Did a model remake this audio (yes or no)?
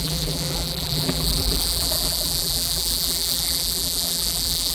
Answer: yes